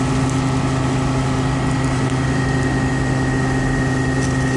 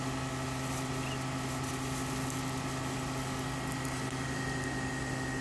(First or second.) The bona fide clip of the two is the second